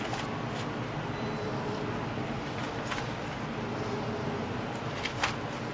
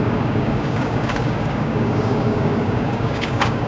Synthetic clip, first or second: second